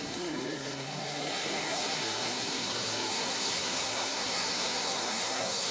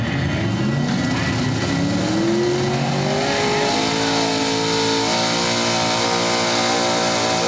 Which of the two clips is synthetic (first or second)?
first